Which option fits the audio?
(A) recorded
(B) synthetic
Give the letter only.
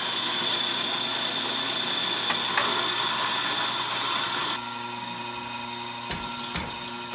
A